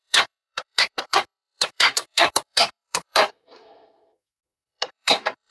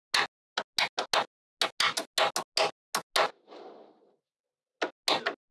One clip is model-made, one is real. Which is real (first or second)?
second